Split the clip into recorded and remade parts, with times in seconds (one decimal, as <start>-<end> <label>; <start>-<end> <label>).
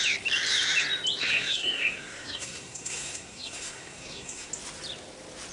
0.0-1.2 recorded; 1.2-4.5 remade; 4.5-5.5 recorded